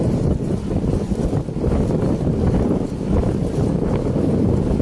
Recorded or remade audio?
recorded